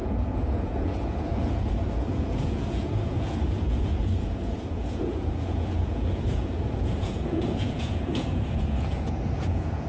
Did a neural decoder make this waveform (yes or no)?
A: yes